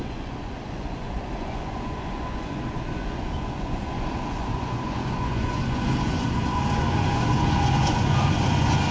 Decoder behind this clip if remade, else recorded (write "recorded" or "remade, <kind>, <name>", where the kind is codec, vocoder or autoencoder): remade, vocoder, Vocos